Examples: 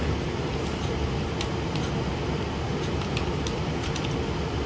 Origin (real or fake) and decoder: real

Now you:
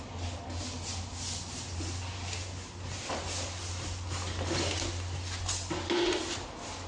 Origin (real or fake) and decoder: real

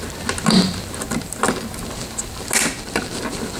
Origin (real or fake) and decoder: real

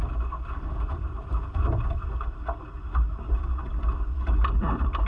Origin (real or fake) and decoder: real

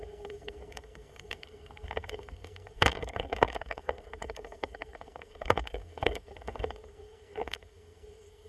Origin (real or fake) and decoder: fake, codec, SNAC